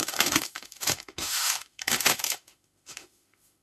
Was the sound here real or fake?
fake